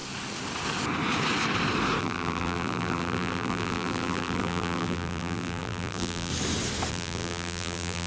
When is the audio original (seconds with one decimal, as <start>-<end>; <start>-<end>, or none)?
0.0-2.0; 6.3-6.9